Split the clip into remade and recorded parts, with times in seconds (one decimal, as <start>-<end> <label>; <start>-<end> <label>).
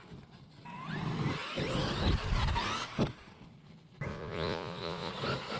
0.0-4.1 recorded; 4.1-5.1 remade; 5.1-5.6 recorded